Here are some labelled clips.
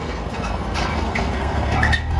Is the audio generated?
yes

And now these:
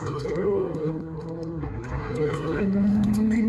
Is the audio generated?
yes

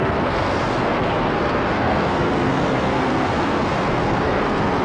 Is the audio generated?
yes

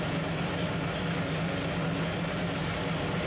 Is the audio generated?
no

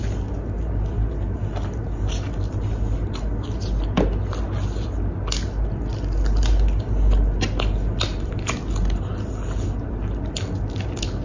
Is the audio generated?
no